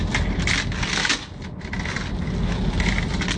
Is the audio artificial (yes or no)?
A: no